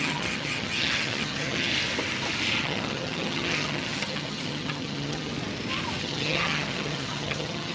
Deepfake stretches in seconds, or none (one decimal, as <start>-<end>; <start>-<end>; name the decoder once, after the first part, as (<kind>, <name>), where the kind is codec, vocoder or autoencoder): 0.0-1.7 (vocoder, HiFi-GAN); 2.6-5.3; 6.0-7.7